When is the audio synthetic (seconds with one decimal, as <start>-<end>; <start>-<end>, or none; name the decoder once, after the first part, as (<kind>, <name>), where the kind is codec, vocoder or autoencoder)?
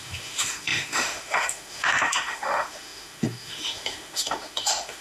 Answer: 0.0-5.0 (autoencoder, DAC-VAE)